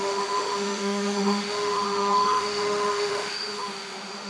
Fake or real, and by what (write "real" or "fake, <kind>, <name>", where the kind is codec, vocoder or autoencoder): fake, autoencoder, DAC-VAE